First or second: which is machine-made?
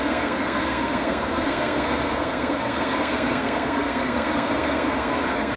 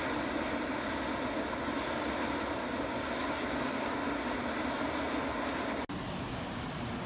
first